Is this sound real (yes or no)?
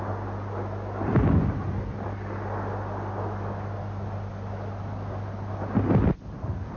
yes